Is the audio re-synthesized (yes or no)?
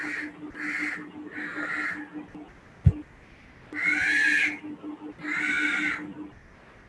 no